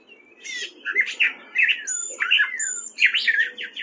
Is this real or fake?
real